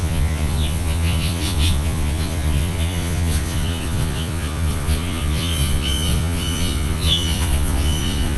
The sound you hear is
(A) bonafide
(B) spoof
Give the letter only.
B